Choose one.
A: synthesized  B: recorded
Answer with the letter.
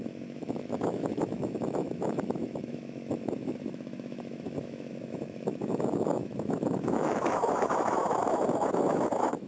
A